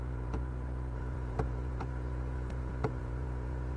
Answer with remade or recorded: remade